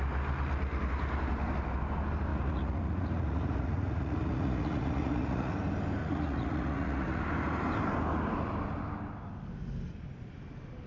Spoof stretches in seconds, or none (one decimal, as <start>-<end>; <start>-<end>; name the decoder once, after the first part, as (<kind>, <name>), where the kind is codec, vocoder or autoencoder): 2.3-5.5 (vocoder, Vocos); 6.0-7.2